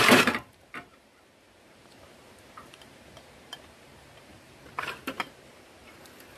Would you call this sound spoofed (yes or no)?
yes